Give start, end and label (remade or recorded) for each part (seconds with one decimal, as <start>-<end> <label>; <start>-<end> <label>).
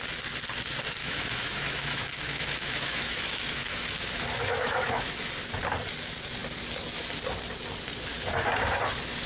0.0-1.0 recorded; 1.0-5.3 remade; 5.3-9.3 recorded